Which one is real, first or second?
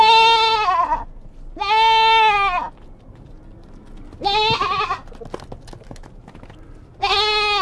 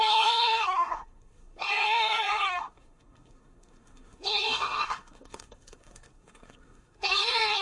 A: first